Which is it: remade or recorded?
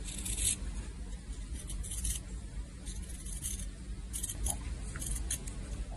recorded